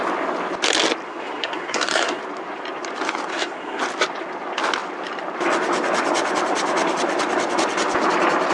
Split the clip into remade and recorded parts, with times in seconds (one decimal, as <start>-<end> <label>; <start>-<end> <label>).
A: 0.0-1.1 recorded; 1.1-2.2 remade; 2.2-3.3 recorded; 3.3-3.8 remade; 3.8-8.5 recorded